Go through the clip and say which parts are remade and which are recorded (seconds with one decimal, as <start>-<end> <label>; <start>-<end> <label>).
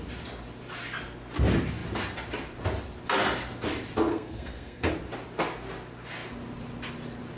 0.0-4.1 recorded; 4.1-4.9 remade; 4.9-7.4 recorded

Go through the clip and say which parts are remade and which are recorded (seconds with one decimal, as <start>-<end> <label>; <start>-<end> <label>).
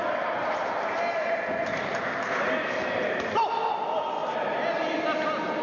0.0-5.6 recorded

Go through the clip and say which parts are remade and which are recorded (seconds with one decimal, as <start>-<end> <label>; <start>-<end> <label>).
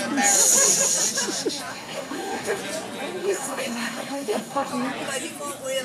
0.0-1.7 recorded; 1.7-2.6 remade; 2.6-3.2 recorded; 3.2-4.7 remade; 4.7-5.8 recorded